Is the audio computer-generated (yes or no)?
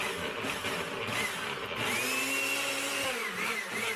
no